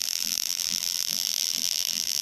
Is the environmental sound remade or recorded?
remade